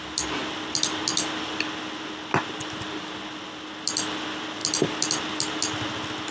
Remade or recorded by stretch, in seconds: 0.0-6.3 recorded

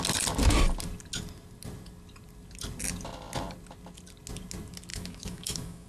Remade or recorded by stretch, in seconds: 0.0-4.9 recorded; 4.9-5.9 remade

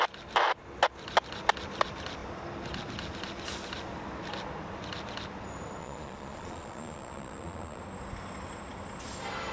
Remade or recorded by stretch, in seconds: 0.0-5.8 recorded; 5.8-7.8 remade; 7.8-9.5 recorded